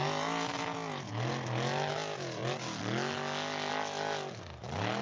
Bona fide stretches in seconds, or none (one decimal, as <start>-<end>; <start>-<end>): 0.0-5.0